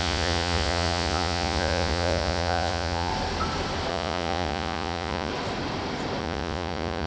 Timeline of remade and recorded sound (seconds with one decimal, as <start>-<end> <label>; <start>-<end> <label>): 0.0-3.1 remade; 3.1-3.9 recorded; 3.9-5.3 remade; 5.3-6.2 recorded; 6.2-7.1 remade